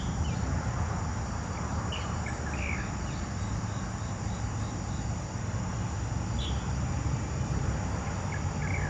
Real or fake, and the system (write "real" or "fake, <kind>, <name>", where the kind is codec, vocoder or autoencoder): fake, vocoder, BigVGAN v2